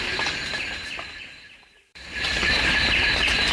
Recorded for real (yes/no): no